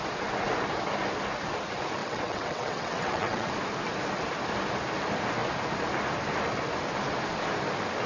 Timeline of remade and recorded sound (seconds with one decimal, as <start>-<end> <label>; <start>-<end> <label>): 0.0-2.0 recorded; 2.0-3.5 remade; 3.5-8.1 recorded